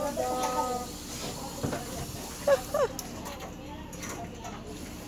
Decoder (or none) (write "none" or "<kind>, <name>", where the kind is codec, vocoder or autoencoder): none